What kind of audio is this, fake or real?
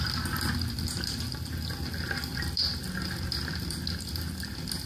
fake